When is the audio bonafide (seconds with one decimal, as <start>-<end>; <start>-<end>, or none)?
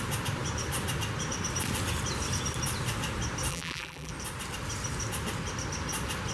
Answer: 0.0-3.5; 4.1-6.3